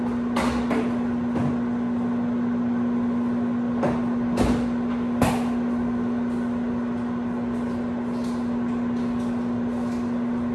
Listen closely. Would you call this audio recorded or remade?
recorded